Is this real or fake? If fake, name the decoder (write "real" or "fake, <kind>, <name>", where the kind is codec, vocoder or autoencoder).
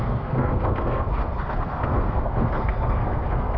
fake, codec, SNAC